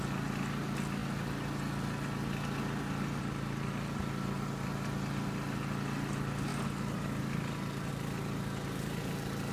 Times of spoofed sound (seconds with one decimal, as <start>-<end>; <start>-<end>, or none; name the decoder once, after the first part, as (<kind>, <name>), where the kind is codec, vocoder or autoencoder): none